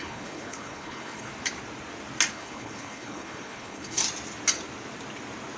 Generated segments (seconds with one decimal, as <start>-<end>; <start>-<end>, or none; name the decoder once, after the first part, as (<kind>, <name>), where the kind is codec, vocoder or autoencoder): 0.0-1.3 (codec, HILCodec); 2.3-4.0